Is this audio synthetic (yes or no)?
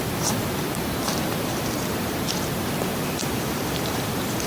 yes